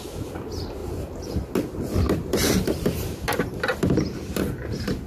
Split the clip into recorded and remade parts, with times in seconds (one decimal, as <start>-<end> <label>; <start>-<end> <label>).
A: 0.0-0.8 recorded; 0.8-1.5 remade; 1.5-2.4 recorded; 2.4-3.1 remade; 3.1-5.1 recorded